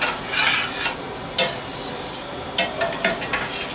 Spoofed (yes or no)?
no